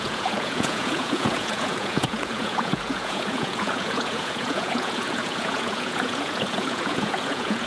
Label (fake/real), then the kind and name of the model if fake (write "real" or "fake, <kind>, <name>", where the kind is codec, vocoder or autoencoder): fake, vocoder, Vocos